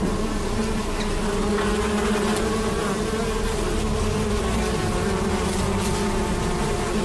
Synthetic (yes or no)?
no